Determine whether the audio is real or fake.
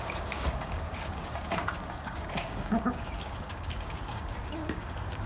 fake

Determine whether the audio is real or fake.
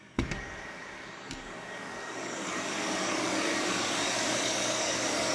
fake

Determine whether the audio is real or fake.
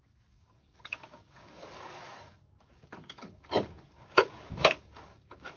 fake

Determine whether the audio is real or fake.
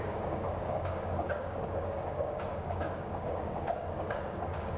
fake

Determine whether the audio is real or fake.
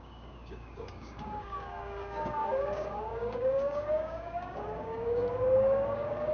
fake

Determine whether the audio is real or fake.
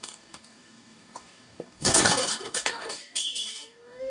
fake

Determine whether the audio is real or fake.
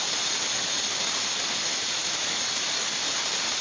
real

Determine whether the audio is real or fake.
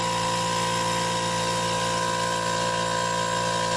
real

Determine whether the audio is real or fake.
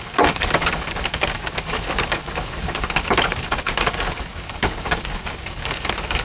fake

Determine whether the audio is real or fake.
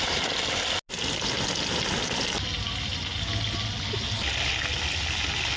real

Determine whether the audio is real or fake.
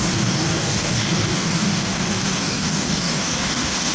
fake